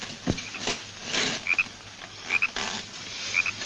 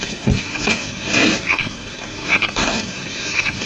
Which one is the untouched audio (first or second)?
first